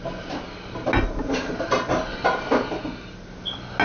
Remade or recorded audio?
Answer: recorded